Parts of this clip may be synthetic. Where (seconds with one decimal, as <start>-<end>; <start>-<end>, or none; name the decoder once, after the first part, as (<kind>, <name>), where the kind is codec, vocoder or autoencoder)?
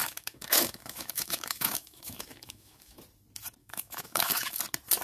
0.0-3.0 (autoencoder, DAC-VAE); 3.6-4.6